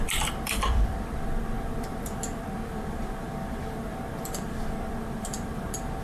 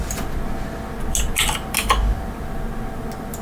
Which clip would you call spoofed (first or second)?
first